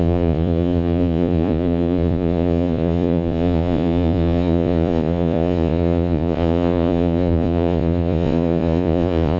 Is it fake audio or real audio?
fake